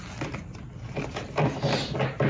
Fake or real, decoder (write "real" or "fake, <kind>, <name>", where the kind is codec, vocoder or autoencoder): real